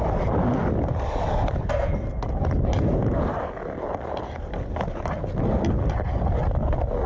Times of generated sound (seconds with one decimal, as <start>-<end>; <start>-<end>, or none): none